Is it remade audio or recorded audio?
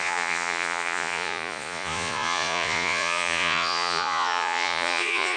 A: remade